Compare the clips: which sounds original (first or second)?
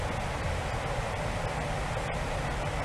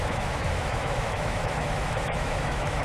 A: first